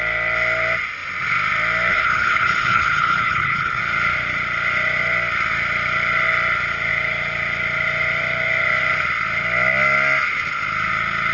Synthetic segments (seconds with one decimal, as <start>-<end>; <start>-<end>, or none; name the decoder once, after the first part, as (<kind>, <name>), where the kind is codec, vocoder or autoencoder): 1.9-3.8 (codec, HILCodec)